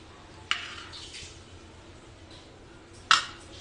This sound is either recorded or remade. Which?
recorded